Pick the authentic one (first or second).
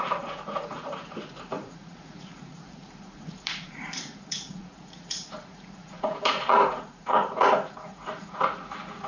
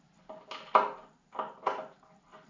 second